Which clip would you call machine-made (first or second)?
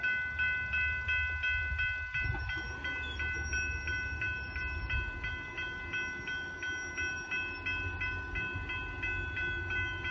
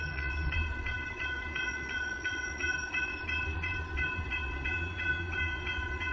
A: second